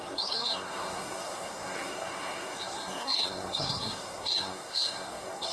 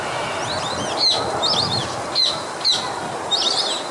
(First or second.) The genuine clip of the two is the second